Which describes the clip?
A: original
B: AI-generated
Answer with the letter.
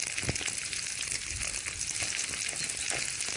A